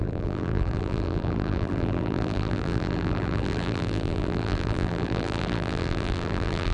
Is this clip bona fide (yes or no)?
no